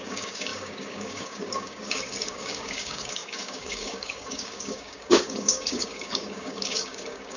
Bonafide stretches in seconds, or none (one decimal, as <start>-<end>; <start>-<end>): none